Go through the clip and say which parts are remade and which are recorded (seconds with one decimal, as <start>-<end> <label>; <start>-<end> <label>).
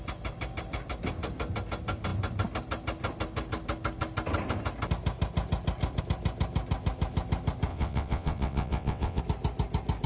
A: 0.0-7.7 recorded; 7.7-9.2 remade; 9.2-10.1 recorded